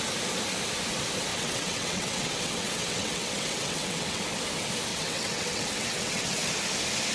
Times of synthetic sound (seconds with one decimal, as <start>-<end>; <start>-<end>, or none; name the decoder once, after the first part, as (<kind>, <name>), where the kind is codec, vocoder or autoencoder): 1.3-4.2 (vocoder, WaveNeXt); 4.9-6.5